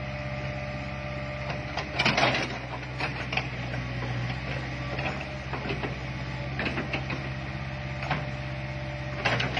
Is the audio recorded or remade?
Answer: recorded